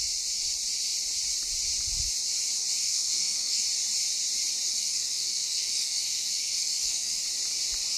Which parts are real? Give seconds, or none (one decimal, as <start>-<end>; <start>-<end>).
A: 0.0-2.8; 3.6-4.7; 7.2-8.0